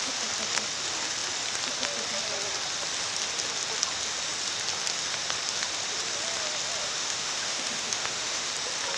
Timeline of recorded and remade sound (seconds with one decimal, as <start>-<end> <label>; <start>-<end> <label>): 0.0-6.8 recorded; 6.8-8.5 remade; 8.5-9.0 recorded